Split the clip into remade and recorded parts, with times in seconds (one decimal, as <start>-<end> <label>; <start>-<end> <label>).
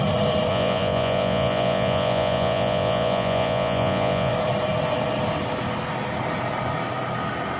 0.0-0.5 recorded; 0.5-4.3 remade; 4.3-7.6 recorded